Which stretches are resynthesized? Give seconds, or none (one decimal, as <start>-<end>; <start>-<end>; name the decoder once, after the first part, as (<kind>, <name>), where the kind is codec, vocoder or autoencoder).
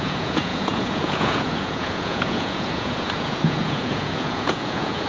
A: 0.0-5.1 (vocoder, Vocos)